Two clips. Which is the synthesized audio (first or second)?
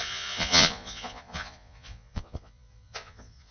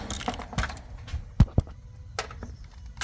first